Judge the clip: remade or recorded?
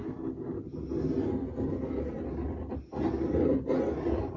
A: recorded